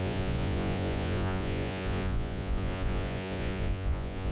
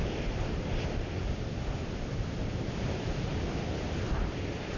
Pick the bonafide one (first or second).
second